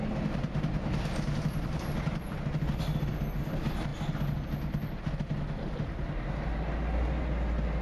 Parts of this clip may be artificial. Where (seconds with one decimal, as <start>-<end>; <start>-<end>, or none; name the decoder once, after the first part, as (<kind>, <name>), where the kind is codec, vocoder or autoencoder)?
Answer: none